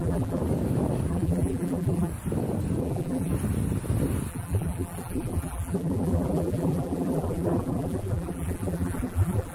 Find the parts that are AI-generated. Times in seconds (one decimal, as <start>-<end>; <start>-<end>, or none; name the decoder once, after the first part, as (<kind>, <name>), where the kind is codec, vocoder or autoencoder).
0.0-0.4 (vocoder, BigVGAN v2); 1.1-2.1; 2.8-3.3; 4.3-9.5